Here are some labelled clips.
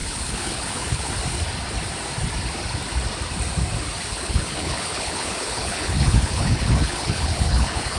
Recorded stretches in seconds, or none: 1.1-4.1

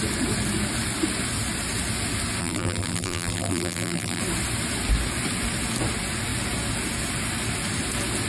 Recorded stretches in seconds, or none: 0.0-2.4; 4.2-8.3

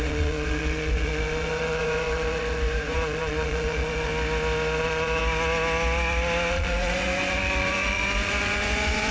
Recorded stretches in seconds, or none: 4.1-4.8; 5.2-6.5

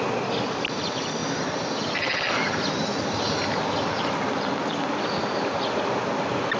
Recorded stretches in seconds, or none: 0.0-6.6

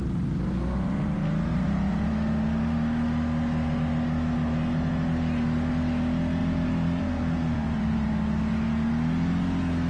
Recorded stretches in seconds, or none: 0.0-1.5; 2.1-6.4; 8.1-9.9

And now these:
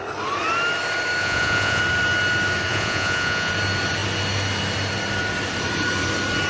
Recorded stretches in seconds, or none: 0.0-1.2; 1.8-2.7; 3.5-6.5

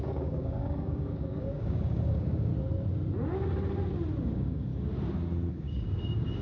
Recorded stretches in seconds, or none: 2.5-4.2; 4.7-5.5